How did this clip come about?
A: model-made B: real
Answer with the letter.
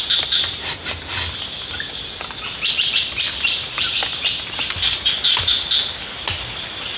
B